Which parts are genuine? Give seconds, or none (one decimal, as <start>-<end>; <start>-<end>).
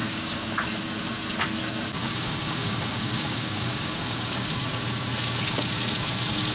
0.5-2.0; 4.3-6.5